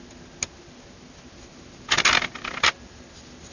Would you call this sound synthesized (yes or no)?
no